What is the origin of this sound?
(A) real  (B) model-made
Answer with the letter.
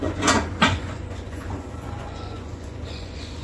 B